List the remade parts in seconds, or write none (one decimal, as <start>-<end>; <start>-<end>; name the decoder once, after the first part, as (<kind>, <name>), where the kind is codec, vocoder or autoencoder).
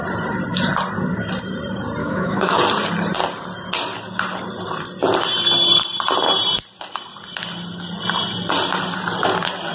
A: 2.0-2.6 (autoencoder, DAC-VAE)